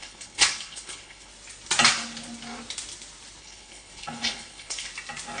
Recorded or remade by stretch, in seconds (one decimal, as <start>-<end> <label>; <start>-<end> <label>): 0.0-1.3 remade; 1.3-3.4 recorded; 3.4-4.9 remade; 4.9-5.4 recorded